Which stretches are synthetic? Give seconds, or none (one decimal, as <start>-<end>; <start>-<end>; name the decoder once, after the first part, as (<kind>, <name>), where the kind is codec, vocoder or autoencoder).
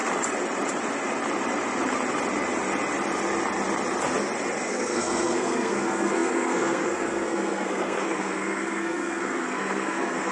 4.7-10.3 (codec, SNAC)